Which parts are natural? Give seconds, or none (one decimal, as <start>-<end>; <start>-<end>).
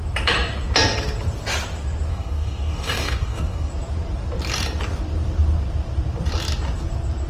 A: 0.0-2.1; 3.7-7.3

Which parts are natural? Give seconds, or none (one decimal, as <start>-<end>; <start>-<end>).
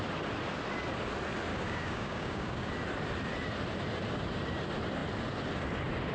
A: 0.0-1.5; 2.7-6.1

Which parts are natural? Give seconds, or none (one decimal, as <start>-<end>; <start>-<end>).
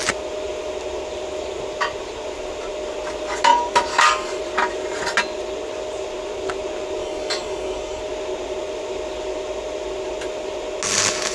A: 0.0-3.9; 4.4-7.0; 8.0-11.3